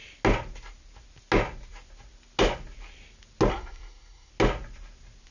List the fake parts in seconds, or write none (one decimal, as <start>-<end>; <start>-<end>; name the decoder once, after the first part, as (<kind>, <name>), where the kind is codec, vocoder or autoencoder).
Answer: 3.5-4.3 (codec, SNAC)